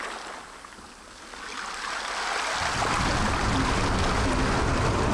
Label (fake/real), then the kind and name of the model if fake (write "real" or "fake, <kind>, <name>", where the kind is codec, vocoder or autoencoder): real